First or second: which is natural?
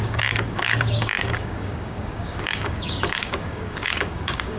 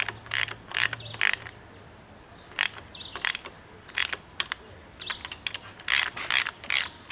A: second